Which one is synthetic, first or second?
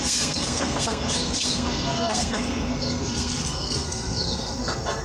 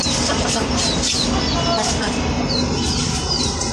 first